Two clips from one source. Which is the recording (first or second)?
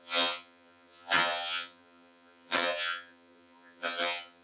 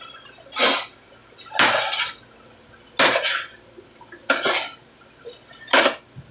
second